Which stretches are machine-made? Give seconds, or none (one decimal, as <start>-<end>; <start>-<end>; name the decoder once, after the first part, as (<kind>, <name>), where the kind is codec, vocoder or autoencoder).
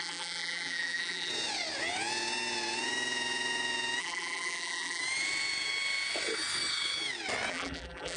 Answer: 0.0-1.3 (vocoder, BigVGAN v2); 4.0-5.0; 7.5-8.2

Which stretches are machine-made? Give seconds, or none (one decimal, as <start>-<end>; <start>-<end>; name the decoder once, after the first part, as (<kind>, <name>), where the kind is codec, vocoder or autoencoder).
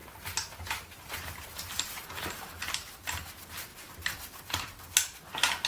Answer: 1.1-5.7 (vocoder, BigVGAN v2)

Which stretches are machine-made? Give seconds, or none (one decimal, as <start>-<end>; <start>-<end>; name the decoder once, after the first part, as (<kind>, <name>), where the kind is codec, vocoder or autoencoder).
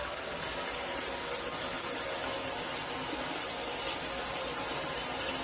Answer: 4.2-5.4 (vocoder, BigVGAN v2)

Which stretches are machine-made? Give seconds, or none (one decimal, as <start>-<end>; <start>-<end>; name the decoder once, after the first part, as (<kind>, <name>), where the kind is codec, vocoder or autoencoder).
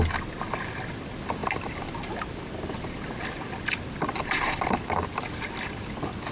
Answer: none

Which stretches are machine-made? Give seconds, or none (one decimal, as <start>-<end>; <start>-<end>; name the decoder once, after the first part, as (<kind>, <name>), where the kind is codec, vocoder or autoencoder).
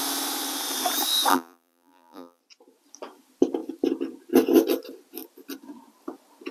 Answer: 1.3-2.4 (vocoder, BigVGAN v2)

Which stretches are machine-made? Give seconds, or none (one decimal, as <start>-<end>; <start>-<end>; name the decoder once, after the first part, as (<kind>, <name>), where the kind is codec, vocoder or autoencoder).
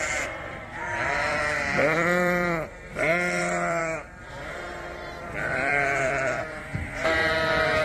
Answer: 0.0-2.9 (vocoder, BigVGAN v2); 3.4-7.8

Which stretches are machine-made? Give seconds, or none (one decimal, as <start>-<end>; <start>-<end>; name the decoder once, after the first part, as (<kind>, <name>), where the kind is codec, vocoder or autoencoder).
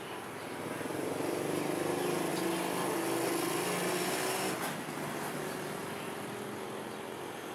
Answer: none